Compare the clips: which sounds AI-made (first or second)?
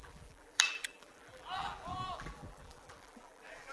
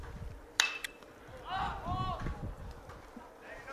first